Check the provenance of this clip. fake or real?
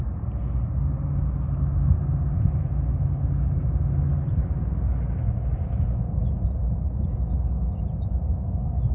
real